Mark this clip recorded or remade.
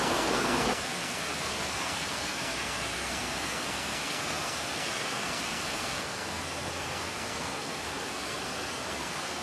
remade